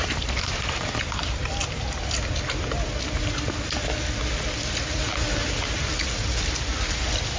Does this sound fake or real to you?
real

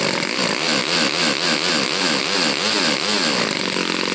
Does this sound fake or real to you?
real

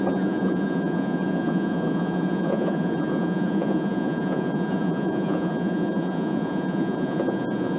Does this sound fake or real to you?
fake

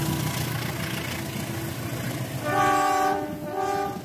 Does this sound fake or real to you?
real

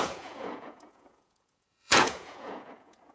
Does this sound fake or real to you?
fake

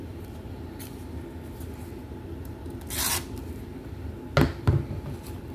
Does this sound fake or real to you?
real